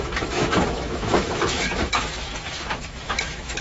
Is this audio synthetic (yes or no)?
yes